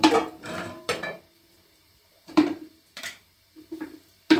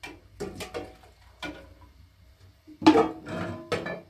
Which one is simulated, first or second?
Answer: first